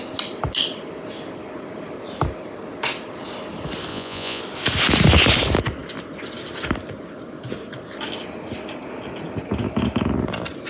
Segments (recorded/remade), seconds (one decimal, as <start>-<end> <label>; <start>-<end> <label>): 0.0-3.9 recorded; 3.9-4.4 remade; 4.4-10.7 recorded